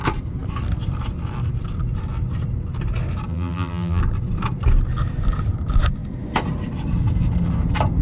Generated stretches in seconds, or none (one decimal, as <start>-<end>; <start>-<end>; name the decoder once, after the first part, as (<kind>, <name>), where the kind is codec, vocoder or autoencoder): 3.3-4.0 (vocoder, BigVGAN v2)